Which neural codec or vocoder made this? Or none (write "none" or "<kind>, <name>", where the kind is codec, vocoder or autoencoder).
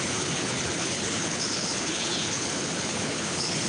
codec, HILCodec